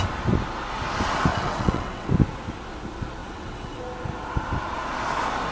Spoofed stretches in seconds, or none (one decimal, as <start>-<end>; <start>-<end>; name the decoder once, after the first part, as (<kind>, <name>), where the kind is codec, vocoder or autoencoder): 1.3-2.1 (vocoder, WaveNeXt); 3.2-3.8